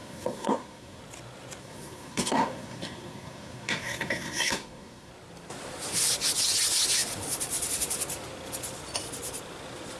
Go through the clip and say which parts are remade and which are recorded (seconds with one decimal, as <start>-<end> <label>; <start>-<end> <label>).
0.0-1.0 remade; 1.0-1.6 recorded; 1.6-5.1 remade; 5.1-10.0 recorded